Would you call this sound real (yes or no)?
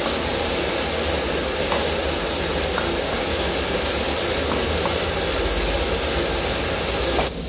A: yes